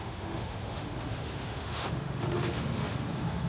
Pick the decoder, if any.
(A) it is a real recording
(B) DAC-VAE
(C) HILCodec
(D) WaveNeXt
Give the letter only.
B